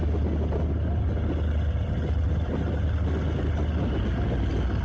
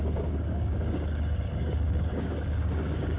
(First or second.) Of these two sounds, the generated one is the second